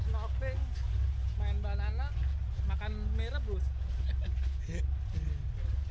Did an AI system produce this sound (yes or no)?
no